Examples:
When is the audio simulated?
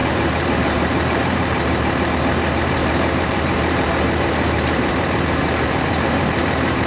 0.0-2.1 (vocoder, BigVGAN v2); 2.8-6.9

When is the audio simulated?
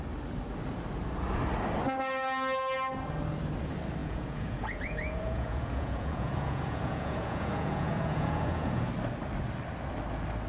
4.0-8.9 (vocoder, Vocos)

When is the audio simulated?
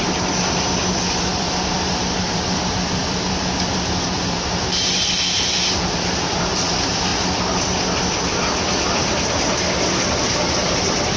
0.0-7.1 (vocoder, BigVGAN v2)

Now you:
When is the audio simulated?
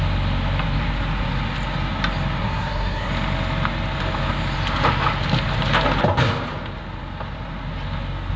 2.4-3.1 (codec, SNAC)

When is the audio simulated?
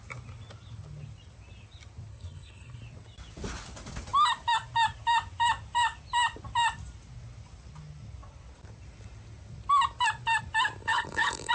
2.1-2.8 (codec, HILCodec); 10.8-11.5